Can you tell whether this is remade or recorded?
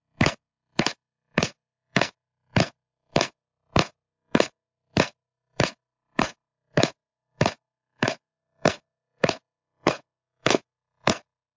remade